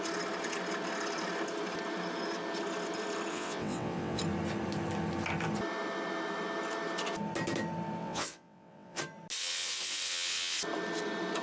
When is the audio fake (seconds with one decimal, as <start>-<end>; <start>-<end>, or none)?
3.3-4.2; 8.0-9.0; 9.4-10.6